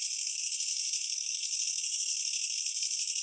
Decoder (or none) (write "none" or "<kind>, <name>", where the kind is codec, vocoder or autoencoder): codec, SNAC